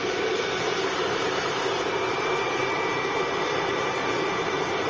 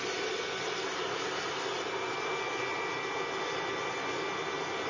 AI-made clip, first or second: first